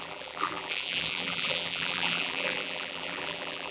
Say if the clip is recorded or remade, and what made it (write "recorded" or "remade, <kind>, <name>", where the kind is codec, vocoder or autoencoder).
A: remade, vocoder, BigVGAN v2